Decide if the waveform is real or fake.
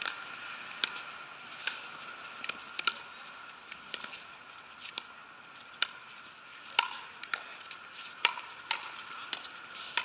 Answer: real